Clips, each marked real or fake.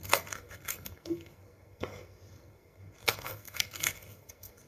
fake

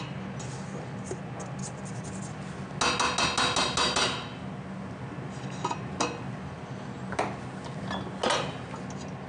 real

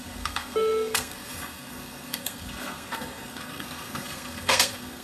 fake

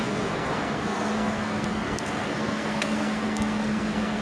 fake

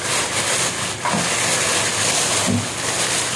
real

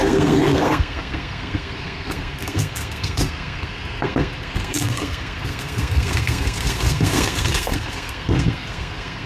fake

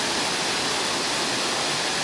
real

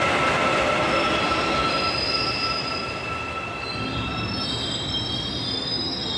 real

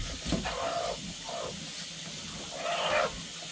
real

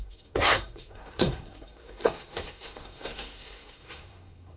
fake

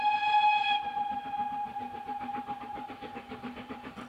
real